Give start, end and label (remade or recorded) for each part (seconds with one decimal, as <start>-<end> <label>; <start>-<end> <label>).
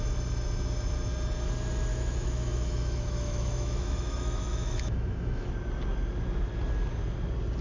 0.0-1.9 recorded; 1.9-5.5 remade; 5.5-7.6 recorded